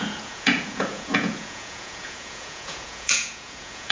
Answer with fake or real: fake